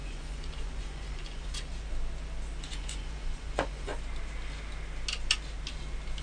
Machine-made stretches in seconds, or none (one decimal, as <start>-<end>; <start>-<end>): 0.0-1.7; 2.6-3.9